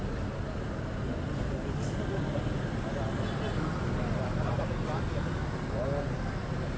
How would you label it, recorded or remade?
recorded